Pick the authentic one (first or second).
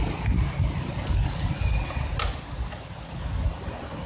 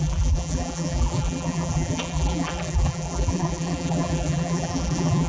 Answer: first